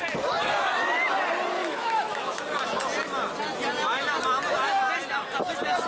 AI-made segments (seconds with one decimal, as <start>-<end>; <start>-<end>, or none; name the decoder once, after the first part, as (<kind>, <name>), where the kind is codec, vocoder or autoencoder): 1.6-2.4 (autoencoder, DAC-VAE)